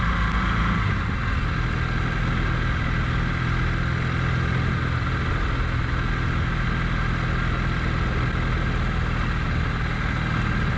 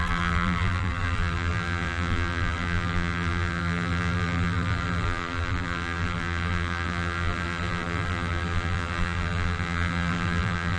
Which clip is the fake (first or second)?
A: second